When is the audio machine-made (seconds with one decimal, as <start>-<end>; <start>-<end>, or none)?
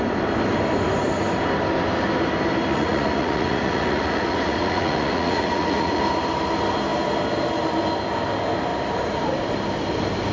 2.7-6.0